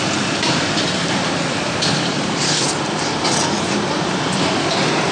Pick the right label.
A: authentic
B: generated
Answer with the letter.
B